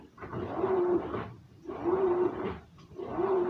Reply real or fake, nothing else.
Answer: fake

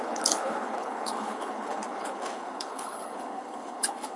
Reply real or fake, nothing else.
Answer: fake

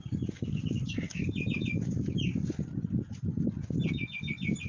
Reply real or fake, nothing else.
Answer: real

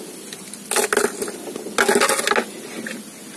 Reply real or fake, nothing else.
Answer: real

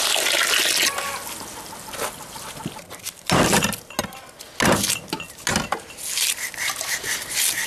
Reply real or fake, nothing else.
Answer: real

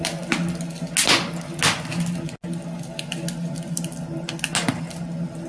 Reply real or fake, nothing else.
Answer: real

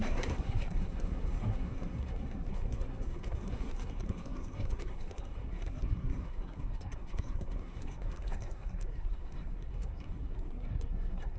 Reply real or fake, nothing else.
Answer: fake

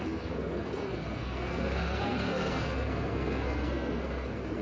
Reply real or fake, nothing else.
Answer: fake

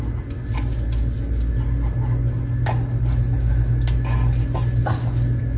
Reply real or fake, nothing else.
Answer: real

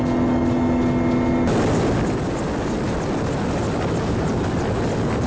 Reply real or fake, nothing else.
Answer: real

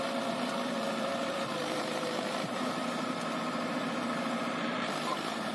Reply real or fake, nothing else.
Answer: fake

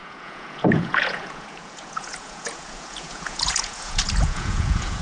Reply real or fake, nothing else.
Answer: fake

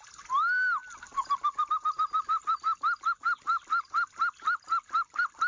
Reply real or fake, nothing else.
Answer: real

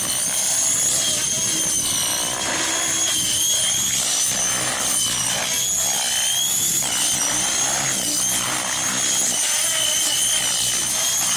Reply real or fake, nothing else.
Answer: real